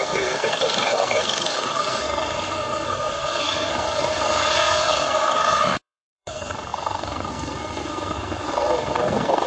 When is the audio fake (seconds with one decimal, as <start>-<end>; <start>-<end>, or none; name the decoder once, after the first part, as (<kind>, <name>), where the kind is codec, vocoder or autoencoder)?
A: 0.0-9.5 (codec, SNAC)